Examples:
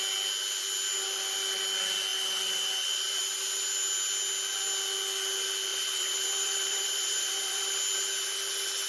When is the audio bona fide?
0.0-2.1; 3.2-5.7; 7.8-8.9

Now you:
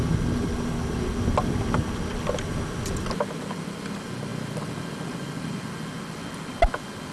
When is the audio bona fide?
0.0-7.1

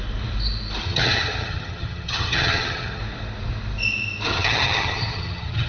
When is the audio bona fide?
0.0-0.8; 3.0-4.3

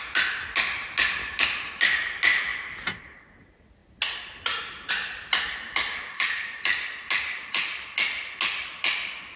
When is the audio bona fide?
0.0-9.4